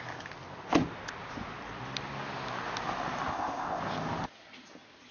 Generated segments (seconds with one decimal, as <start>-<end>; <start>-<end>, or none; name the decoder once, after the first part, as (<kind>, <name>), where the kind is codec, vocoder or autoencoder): 3.3-3.8 (codec, ZipCodec)